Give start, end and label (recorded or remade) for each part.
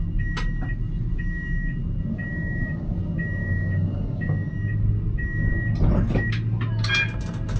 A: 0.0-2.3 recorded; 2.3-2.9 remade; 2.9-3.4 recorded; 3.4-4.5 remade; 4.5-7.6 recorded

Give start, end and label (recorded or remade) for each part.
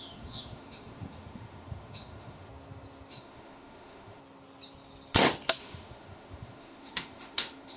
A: 0.0-2.5 remade; 2.5-3.1 recorded; 3.1-4.2 remade; 4.2-5.6 recorded; 5.6-7.8 remade